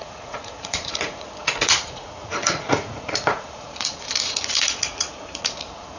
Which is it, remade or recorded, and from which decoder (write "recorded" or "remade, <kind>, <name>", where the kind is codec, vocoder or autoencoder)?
remade, vocoder, Vocos